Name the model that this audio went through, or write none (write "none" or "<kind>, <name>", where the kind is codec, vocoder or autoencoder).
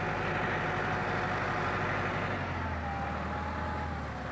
none